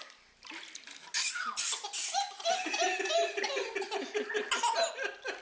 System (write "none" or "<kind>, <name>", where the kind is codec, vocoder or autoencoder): none